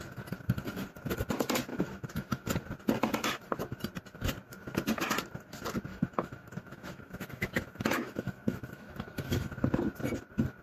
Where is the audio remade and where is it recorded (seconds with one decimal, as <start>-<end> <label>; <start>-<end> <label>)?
0.0-1.7 recorded; 1.7-2.5 remade; 2.5-5.9 recorded; 5.9-9.4 remade; 9.4-10.6 recorded